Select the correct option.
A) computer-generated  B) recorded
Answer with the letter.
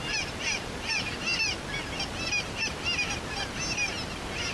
B